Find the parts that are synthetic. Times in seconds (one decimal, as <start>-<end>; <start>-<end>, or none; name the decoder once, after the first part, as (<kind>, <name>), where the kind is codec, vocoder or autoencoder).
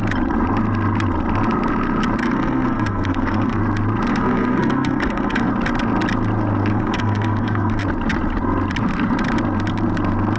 2.2-3.6 (codec, SNAC); 4.1-5.5; 6.7-7.8